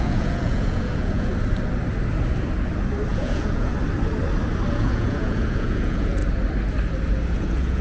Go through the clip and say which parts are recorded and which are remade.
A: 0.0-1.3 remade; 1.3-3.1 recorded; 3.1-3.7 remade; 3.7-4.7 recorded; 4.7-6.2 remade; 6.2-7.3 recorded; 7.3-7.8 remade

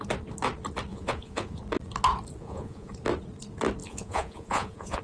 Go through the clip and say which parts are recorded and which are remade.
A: 0.0-0.9 recorded; 0.9-1.6 remade; 1.6-2.4 recorded; 2.4-2.9 remade; 2.9-3.8 recorded; 3.8-5.0 remade

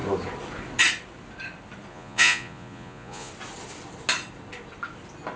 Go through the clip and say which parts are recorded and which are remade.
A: 0.0-1.9 recorded; 1.9-3.3 remade; 3.3-5.4 recorded

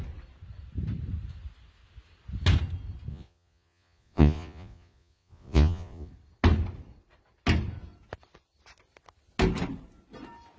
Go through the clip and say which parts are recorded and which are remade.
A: 0.0-3.1 recorded; 3.1-6.1 remade; 6.1-10.6 recorded

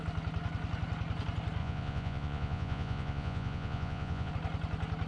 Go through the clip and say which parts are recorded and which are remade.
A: 0.0-1.6 recorded; 1.6-4.3 remade; 4.3-5.1 recorded

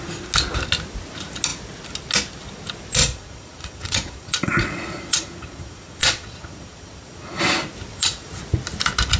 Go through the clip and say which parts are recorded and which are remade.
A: 0.0-3.0 recorded; 3.0-7.4 remade; 7.4-7.9 recorded; 7.9-8.4 remade; 8.4-9.2 recorded

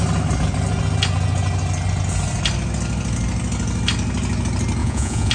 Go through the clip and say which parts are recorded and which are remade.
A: 0.0-4.8 recorded; 4.8-5.3 remade